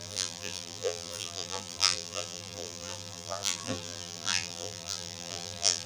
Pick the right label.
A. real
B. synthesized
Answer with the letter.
B